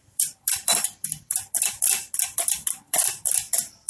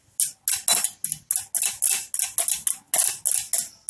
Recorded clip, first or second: second